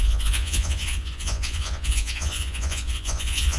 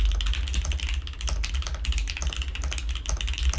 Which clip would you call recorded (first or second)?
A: second